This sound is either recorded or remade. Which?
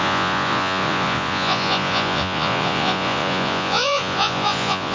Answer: remade